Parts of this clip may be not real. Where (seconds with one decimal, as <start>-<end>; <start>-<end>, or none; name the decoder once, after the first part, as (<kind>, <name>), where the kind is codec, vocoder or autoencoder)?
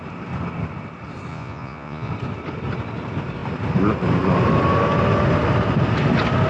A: 1.3-2.1 (vocoder, Vocos)